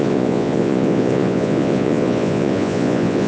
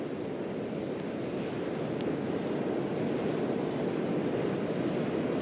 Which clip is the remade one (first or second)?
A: first